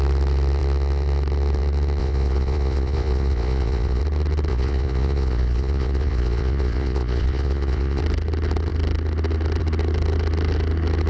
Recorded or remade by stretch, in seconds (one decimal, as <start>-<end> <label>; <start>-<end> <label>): 0.0-2.0 recorded; 2.0-4.0 remade; 4.0-4.5 recorded; 4.5-8.0 remade; 8.0-11.1 recorded